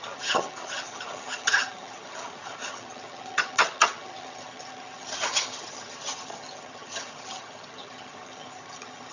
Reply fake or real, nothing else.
fake